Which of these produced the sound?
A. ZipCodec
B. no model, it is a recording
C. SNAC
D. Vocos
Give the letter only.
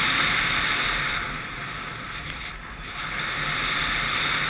B